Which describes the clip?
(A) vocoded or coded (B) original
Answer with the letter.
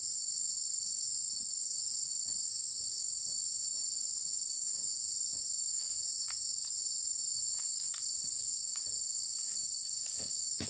A